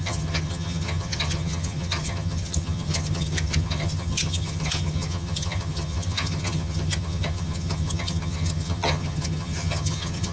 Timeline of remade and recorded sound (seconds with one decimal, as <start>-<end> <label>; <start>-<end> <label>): 0.0-10.3 remade

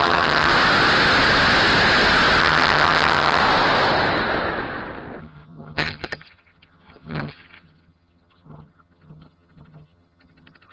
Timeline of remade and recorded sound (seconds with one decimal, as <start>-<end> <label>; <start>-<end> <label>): 0.0-0.5 remade; 0.5-2.4 recorded; 2.4-3.4 remade; 3.4-5.2 recorded; 5.2-10.7 remade

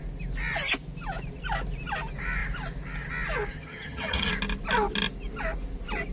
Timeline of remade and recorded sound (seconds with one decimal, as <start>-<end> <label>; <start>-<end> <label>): 0.0-3.5 recorded; 3.5-4.3 remade; 4.3-6.1 recorded

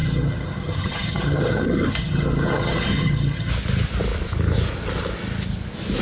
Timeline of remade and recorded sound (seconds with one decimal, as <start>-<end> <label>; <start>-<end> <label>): 0.0-3.5 remade; 3.5-6.0 recorded

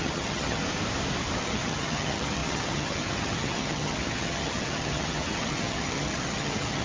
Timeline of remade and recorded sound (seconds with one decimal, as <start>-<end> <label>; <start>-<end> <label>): 0.0-0.6 remade; 0.6-1.4 recorded; 1.4-6.8 remade

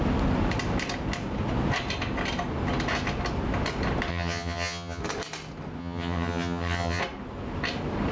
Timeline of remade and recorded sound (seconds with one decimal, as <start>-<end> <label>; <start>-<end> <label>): 0.0-4.1 recorded; 4.1-5.0 remade; 5.0-5.8 recorded; 5.8-7.0 remade; 7.0-8.1 recorded

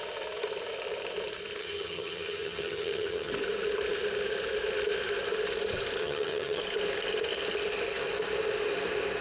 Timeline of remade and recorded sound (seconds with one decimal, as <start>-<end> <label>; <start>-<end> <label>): 0.0-1.6 recorded; 1.6-3.3 remade; 3.3-6.0 recorded; 6.0-6.6 remade; 6.6-9.2 recorded

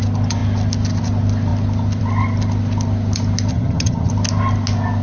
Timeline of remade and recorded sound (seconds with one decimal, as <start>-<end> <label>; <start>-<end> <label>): 0.0-3.5 recorded; 3.5-4.1 remade; 4.1-5.0 recorded